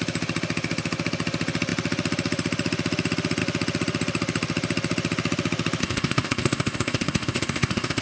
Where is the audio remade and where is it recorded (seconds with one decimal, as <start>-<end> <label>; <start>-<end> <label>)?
0.0-5.8 recorded; 5.8-8.0 remade